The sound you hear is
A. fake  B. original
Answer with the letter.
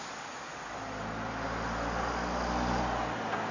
B